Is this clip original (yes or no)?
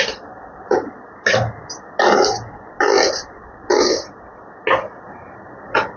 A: yes